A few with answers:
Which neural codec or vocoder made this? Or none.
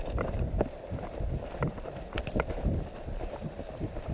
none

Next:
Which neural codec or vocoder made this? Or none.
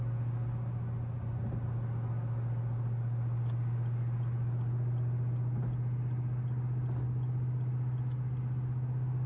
none